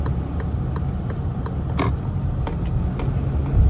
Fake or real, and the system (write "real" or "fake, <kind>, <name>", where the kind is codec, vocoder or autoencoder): real